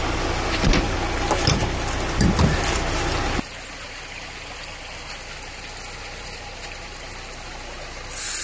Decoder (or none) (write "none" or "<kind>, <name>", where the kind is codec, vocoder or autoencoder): none